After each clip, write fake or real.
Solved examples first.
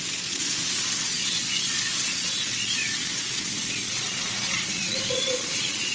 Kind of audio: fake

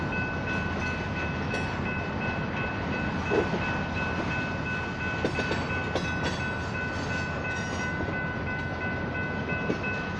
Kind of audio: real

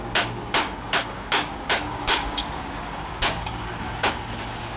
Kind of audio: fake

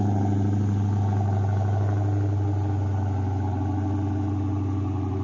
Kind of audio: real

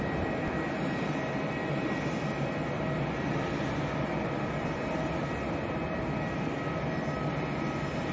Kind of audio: real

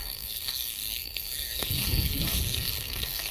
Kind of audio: fake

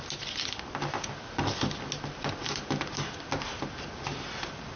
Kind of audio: real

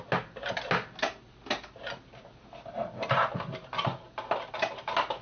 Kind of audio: real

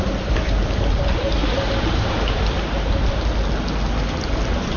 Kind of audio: real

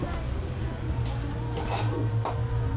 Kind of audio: real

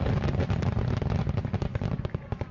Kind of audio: real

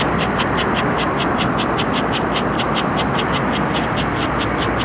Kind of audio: real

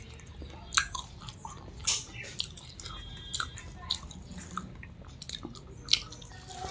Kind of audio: real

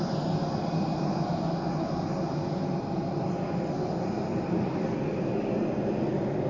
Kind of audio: real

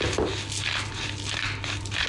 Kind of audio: real